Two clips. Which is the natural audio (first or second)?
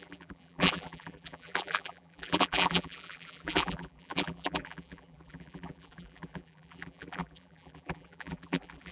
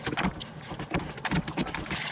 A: second